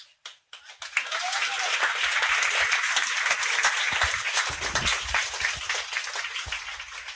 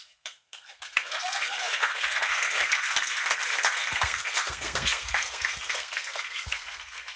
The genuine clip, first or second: first